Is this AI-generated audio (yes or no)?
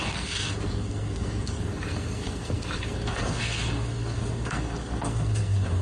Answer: yes